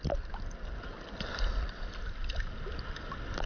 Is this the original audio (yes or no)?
yes